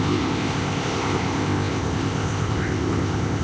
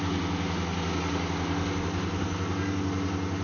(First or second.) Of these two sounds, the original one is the second